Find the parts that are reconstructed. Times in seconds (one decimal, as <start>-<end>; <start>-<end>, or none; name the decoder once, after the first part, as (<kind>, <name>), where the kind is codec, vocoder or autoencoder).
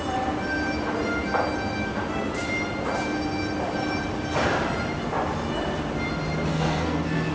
6.5-7.3 (codec, SNAC)